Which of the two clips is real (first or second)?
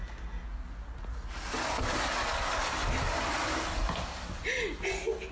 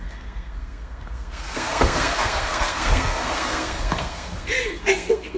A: first